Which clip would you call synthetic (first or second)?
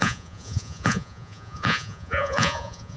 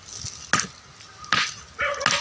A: first